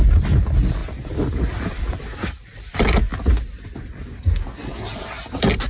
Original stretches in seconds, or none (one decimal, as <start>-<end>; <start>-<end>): 0.0-5.7